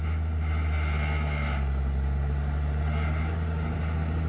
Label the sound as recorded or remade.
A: recorded